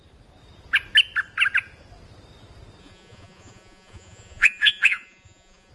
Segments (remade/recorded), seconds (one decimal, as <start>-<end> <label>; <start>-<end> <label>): 0.0-2.8 recorded; 2.8-5.7 remade